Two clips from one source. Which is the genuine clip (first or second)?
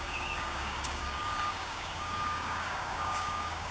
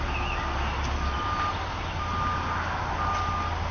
second